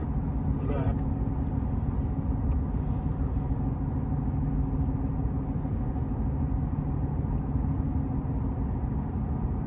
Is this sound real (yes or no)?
yes